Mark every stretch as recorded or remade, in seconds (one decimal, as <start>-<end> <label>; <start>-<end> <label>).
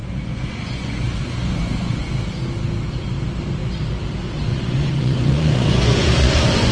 0.0-2.1 remade; 2.1-4.5 recorded; 4.5-6.7 remade